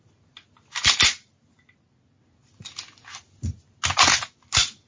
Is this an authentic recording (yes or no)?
yes